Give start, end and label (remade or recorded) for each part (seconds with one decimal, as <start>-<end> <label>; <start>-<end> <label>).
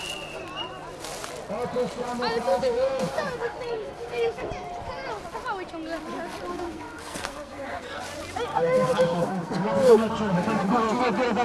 0.0-2.5 recorded; 2.5-4.5 remade; 4.5-6.5 recorded; 6.5-8.0 remade; 8.0-8.5 recorded; 8.5-11.0 remade; 11.0-11.4 recorded